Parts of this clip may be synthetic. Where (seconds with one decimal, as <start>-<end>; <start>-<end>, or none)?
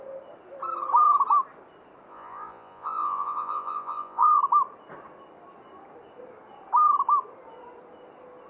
2.1-4.4